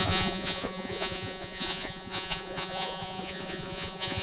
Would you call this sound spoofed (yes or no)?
yes